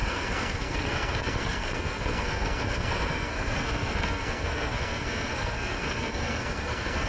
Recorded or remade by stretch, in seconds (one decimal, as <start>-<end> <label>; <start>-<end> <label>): 0.0-7.1 remade